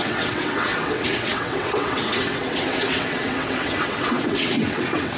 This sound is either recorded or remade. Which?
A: remade